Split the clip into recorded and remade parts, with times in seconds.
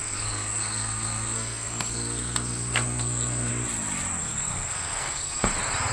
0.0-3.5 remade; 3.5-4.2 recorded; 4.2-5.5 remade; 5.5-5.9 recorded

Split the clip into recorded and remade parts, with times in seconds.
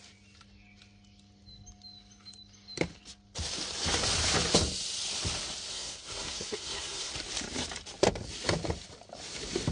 0.0-5.7 recorded; 5.7-7.1 remade; 7.1-9.7 recorded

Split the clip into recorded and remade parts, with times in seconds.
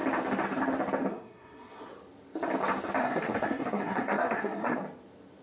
0.0-1.1 recorded; 1.1-1.9 remade; 1.9-3.0 recorded; 3.0-4.8 remade; 4.8-5.4 recorded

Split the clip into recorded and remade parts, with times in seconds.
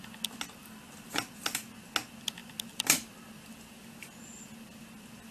0.0-5.3 recorded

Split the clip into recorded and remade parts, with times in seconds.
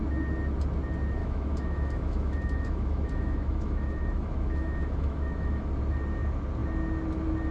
0.0-1.2 recorded; 1.2-5.7 remade; 5.7-7.5 recorded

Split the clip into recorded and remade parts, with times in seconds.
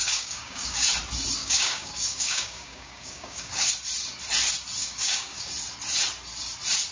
0.0-0.9 remade; 0.9-1.4 recorded; 1.4-3.7 remade; 3.7-4.8 recorded; 4.8-5.5 remade; 5.5-6.9 recorded